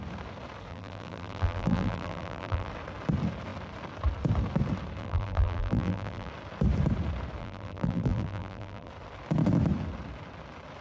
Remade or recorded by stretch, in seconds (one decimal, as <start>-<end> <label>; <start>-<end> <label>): 0.0-0.7 recorded; 0.7-2.7 remade; 2.7-5.0 recorded; 5.0-6.3 remade; 6.3-7.4 recorded; 7.4-8.9 remade; 8.9-10.8 recorded